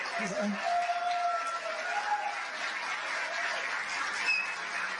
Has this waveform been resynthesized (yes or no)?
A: no